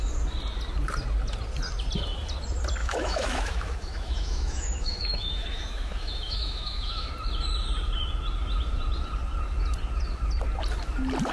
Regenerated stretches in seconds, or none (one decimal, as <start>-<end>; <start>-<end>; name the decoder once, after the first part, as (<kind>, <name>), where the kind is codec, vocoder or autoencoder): 2.8-7.1 (autoencoder, DAC-VAE)